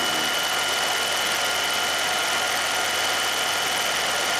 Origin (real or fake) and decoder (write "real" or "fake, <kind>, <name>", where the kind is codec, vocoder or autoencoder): real